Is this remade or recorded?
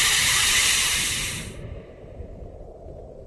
remade